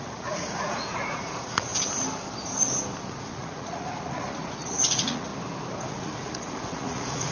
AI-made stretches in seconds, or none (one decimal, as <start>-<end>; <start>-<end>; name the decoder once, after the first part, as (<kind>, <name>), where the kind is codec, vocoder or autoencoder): 0.0-1.7 (vocoder, Vocos); 3.1-5.3; 5.9-7.3